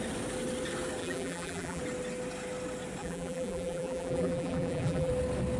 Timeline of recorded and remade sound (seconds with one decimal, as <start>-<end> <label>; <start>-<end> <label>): 0.0-1.0 recorded; 1.0-1.8 remade; 1.8-3.0 recorded; 3.0-5.1 remade; 5.1-5.6 recorded